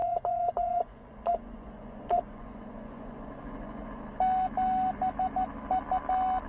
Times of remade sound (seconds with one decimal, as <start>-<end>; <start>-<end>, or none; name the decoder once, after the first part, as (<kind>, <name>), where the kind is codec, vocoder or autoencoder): 0.0-3.9 (vocoder, Vocos)